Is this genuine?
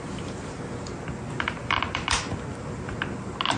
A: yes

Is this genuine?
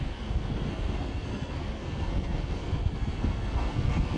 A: no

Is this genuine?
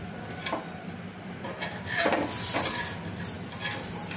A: yes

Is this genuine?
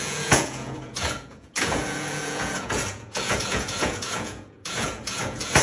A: no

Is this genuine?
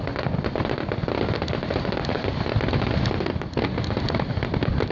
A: yes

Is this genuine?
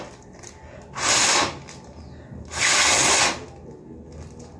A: yes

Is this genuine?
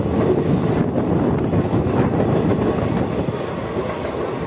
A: yes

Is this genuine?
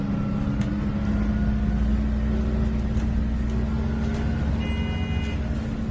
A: yes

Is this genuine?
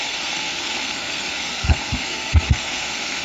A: no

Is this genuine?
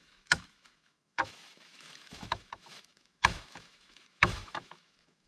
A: no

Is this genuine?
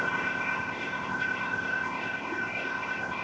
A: no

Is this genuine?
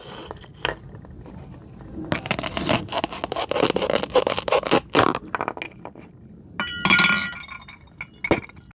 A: yes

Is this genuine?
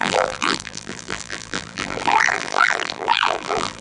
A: no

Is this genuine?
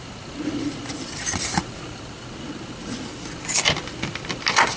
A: yes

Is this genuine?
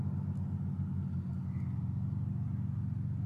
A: yes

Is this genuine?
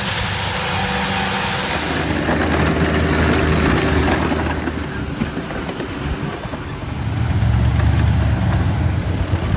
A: yes